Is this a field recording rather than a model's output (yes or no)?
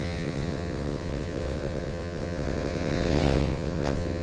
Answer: no